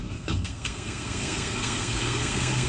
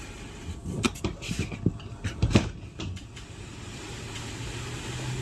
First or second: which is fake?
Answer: first